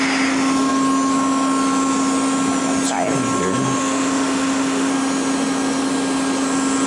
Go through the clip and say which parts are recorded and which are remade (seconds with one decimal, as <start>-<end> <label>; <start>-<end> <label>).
0.0-3.8 recorded; 3.8-4.9 remade; 4.9-6.9 recorded